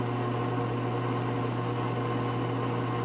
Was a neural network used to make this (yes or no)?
no